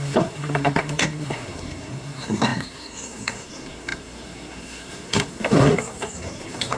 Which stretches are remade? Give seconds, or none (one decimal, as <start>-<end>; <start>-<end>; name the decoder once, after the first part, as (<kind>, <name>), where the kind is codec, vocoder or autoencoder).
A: 0.0-6.8 (codec, SNAC)